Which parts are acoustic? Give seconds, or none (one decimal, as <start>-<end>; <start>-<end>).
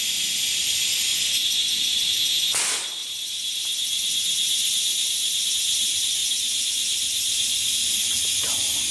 0.0-1.4; 2.2-3.0; 5.5-8.9